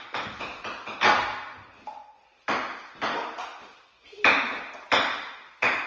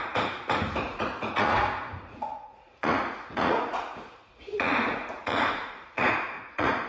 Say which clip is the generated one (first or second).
second